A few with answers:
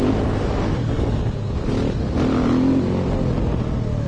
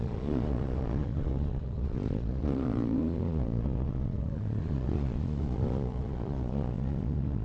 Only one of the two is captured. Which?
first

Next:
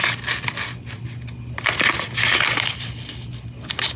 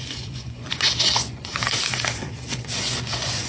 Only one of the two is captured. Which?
first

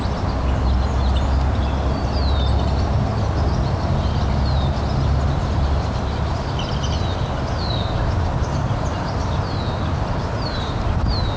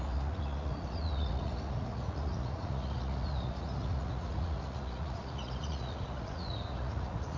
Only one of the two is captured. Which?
first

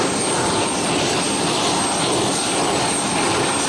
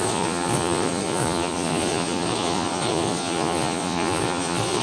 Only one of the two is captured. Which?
first